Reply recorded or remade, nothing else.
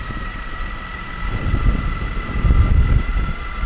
recorded